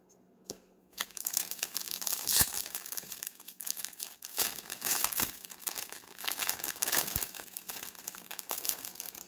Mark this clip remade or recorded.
remade